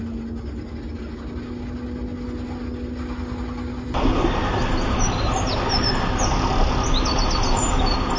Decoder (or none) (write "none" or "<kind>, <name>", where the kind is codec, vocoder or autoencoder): none